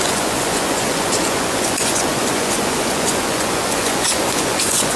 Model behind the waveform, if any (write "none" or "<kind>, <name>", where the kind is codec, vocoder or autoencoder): vocoder, Vocos